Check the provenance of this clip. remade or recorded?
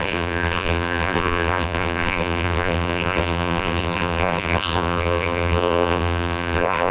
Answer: remade